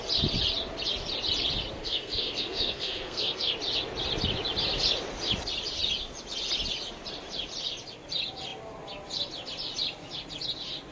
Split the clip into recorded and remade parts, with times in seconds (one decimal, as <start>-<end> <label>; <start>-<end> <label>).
0.0-1.8 recorded; 1.8-3.5 remade; 3.5-10.9 recorded